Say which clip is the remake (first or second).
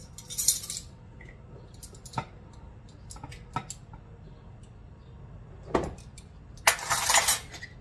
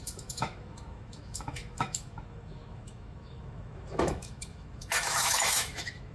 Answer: second